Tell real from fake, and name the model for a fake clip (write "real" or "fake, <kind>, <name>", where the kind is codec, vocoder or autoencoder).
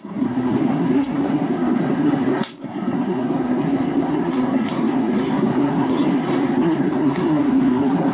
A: fake, codec, SNAC